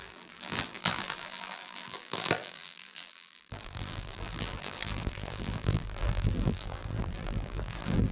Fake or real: fake